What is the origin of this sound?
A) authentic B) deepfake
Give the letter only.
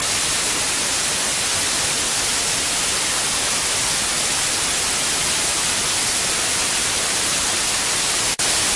A